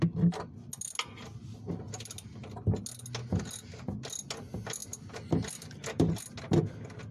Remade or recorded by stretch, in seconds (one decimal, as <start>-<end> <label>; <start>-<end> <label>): 0.0-7.1 recorded